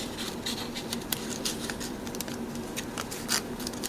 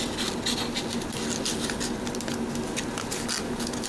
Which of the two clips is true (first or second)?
second